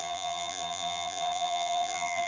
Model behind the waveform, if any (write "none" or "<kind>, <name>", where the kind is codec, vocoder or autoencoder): vocoder, BigVGAN v2